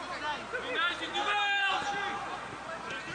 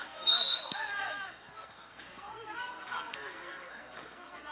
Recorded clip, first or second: first